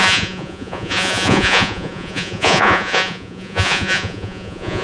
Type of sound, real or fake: fake